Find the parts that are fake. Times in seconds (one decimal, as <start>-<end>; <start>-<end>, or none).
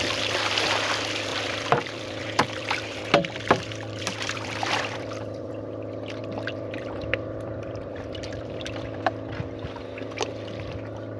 1.3-5.5; 6.2-9.0